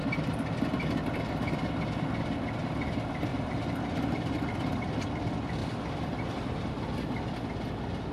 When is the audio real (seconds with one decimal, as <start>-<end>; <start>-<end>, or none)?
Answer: 0.0-3.3; 4.0-5.6; 6.5-8.1